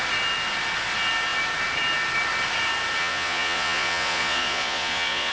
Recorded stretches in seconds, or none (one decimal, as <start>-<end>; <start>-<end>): 0.0-3.0